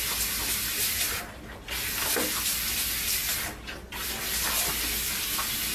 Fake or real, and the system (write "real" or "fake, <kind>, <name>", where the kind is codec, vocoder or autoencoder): real